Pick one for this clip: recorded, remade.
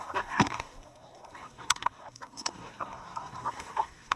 remade